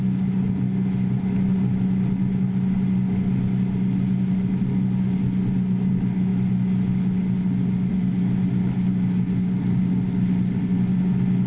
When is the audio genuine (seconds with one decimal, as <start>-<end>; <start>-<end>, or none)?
0.0-11.5